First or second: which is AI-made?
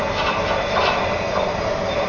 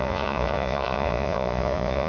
second